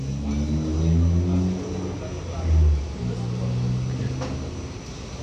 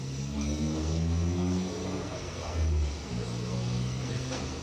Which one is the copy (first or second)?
second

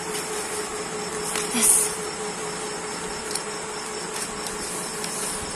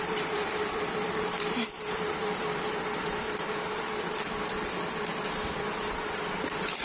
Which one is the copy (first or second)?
second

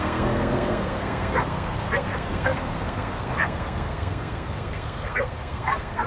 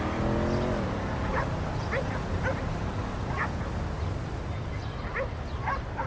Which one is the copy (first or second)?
first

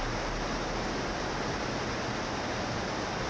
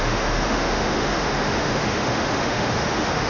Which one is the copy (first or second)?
second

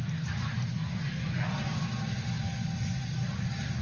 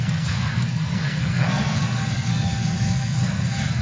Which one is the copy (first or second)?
second